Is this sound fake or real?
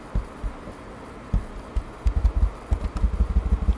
real